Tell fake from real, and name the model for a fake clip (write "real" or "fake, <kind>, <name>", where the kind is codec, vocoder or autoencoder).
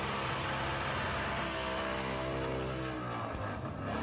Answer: real